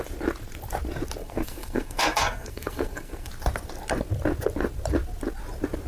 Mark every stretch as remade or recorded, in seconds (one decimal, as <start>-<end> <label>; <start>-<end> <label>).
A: 0.0-1.2 recorded; 1.2-3.3 remade; 3.3-5.9 recorded